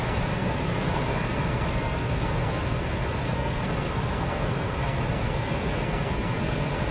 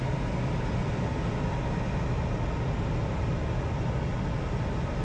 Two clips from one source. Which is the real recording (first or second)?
second